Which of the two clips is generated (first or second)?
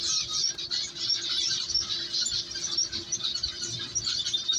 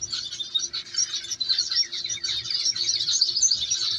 first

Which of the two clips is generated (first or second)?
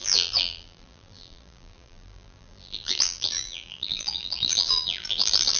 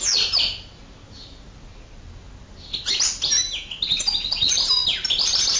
first